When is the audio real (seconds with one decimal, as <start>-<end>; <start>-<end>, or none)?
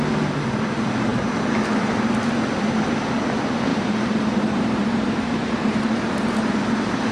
0.0-3.7; 6.6-7.1